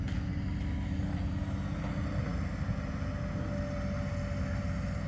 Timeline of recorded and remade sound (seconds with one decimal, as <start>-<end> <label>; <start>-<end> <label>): 0.0-5.1 recorded

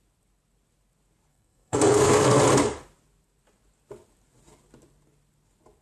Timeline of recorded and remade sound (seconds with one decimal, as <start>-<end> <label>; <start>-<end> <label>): 0.0-1.3 recorded; 1.3-2.4 remade; 2.4-5.8 recorded

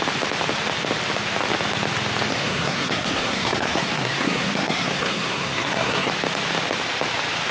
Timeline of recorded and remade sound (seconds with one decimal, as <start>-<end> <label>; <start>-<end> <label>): 0.0-2.3 recorded; 2.3-6.1 remade; 6.1-7.5 recorded

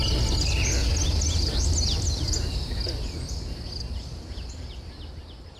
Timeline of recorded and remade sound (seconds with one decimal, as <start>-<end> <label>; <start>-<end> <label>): 0.0-5.6 recorded

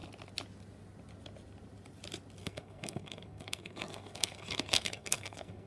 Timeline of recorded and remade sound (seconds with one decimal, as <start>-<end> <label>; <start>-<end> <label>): 0.0-2.4 recorded; 2.4-5.7 remade

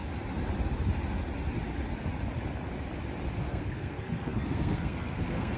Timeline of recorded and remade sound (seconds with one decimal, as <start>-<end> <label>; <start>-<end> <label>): 0.0-3.4 recorded; 3.4-5.6 remade

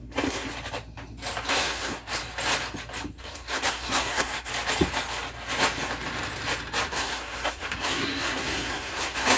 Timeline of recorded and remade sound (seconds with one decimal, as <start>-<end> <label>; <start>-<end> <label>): 0.0-0.5 remade; 0.5-1.5 recorded; 1.5-2.2 remade; 2.2-3.2 recorded; 3.2-4.5 remade; 4.5-6.9 recorded; 6.9-9.4 remade

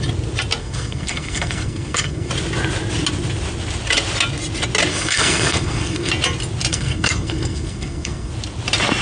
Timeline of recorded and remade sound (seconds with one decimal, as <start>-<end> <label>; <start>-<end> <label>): 0.0-0.6 recorded; 0.6-2.3 remade; 2.3-4.9 recorded; 4.9-6.1 remade; 6.1-6.7 recorded; 6.7-8.3 remade; 8.3-9.0 recorded